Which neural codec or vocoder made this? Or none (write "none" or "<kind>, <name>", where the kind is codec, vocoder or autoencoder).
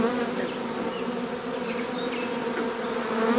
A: none